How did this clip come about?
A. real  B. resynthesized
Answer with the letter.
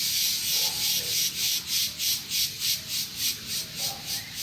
A